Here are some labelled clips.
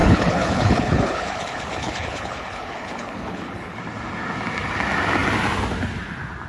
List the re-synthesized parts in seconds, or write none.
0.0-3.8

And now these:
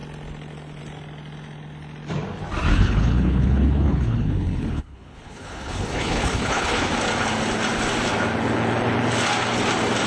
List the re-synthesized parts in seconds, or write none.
2.7-6.9

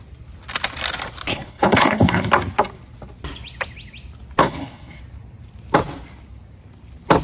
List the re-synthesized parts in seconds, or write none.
1.3-2.3; 4.4-5.0